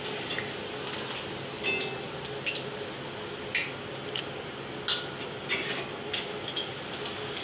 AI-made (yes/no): no